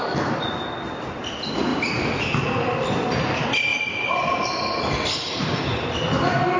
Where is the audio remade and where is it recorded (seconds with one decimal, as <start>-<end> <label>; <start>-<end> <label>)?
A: 0.0-1.7 recorded; 1.7-2.2 remade; 2.2-6.6 recorded